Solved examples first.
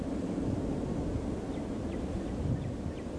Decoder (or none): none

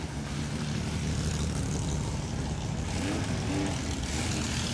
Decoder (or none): none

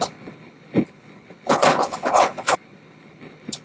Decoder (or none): codec, HILCodec